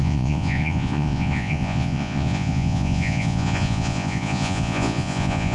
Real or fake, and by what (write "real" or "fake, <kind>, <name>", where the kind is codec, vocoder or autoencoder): fake, vocoder, Vocos